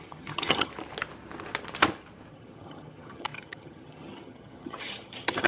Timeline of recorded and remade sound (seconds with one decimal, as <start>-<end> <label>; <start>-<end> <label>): 0.0-0.7 remade; 0.7-2.3 recorded; 2.3-5.5 remade